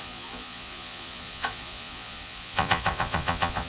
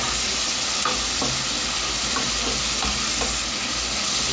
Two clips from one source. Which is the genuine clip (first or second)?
second